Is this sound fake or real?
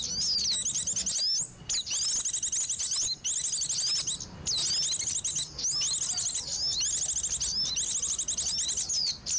real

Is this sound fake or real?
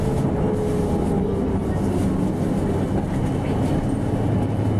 real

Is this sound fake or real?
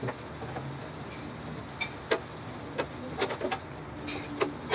real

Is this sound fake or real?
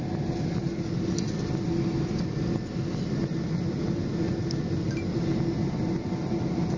real